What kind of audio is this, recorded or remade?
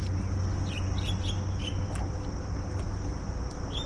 recorded